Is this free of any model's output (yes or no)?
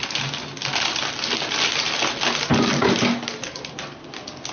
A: yes